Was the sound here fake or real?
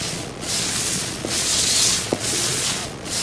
fake